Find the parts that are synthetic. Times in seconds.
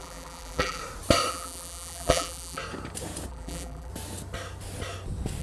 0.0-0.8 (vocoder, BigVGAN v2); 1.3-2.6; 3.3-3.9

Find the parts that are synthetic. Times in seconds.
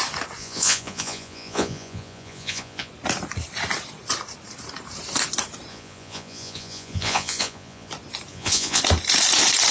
0.4-2.9 (vocoder, Vocos); 5.7-7.9; 8.3-8.8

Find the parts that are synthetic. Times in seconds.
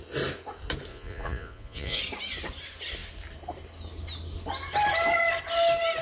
0.9-2.0 (vocoder, Vocos)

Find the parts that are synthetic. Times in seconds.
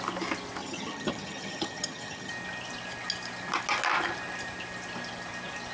0.6-2.3 (vocoder, HiFi-GAN)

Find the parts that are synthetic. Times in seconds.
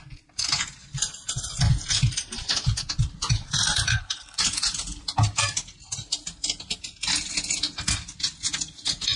3.9-4.4 (codec, HILCodec)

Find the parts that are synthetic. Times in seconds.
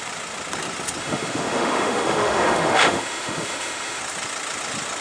1.0-4.0 (autoencoder, DAC-VAE)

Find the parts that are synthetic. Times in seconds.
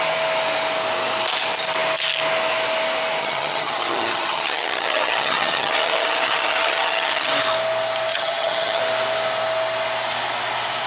3.2-7.3 (vocoder, HiFi-GAN); 8.1-8.8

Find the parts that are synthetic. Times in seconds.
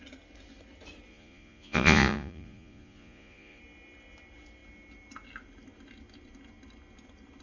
1.1-3.6 (vocoder, Vocos)